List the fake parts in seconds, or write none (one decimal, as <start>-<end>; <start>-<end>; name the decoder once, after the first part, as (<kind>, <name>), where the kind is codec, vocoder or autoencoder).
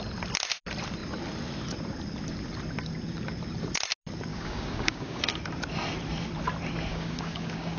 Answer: 4.3-5.2 (codec, DAC); 6.9-7.8